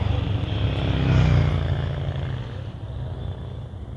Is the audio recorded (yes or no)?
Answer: yes